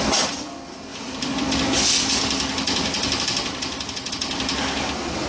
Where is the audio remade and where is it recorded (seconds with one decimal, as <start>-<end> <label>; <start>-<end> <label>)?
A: 0.0-5.3 recorded